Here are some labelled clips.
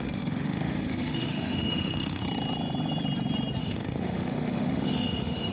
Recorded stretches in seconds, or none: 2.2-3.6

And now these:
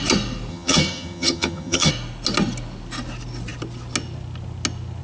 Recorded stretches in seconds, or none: 0.0-0.5; 1.9-5.0

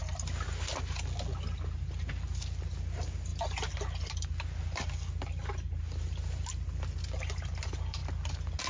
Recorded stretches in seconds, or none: 0.0-8.7